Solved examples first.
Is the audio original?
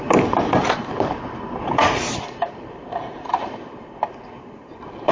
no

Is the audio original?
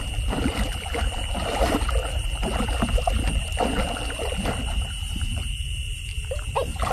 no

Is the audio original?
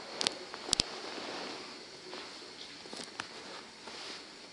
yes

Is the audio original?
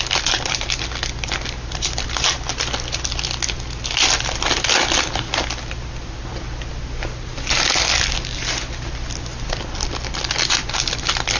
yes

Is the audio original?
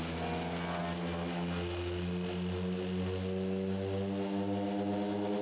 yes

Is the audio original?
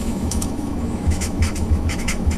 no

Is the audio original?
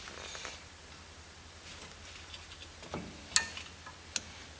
yes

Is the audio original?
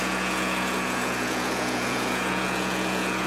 no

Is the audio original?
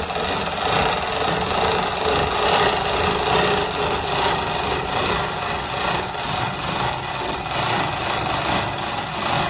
yes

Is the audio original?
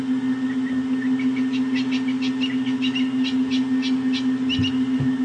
yes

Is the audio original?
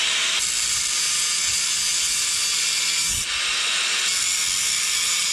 yes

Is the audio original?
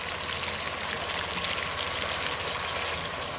yes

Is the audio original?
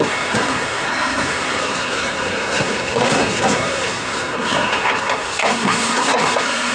no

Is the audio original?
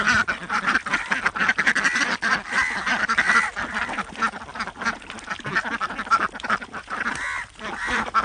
yes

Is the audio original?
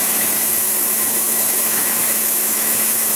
no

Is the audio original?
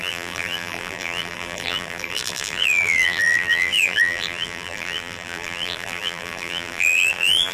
no